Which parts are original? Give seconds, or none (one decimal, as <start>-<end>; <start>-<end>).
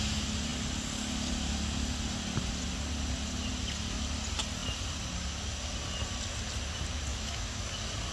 0.0-7.1; 7.6-8.1